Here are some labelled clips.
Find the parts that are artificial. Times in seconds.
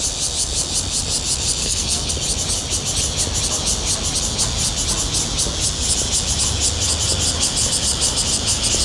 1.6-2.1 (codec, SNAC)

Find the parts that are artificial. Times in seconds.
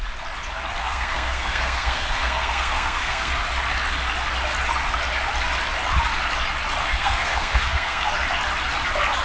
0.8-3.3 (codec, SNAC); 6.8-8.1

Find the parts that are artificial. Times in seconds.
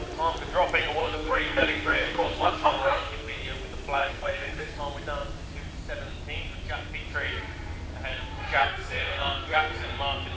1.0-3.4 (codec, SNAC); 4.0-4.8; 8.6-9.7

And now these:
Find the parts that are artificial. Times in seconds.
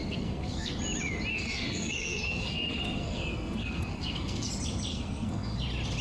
0.0-0.7 (codec, SNAC); 1.3-4.5; 4.9-5.6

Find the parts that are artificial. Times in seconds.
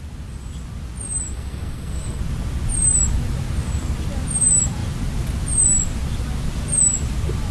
1.3-2.2 (codec, SNAC)